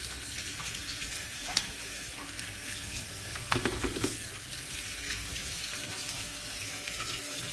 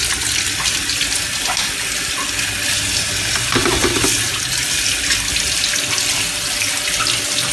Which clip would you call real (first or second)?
second